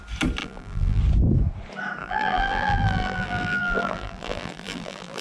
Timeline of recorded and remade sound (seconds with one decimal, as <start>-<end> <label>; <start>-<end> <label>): 0.0-0.4 recorded; 0.4-1.0 remade; 1.0-2.0 recorded; 2.0-5.2 remade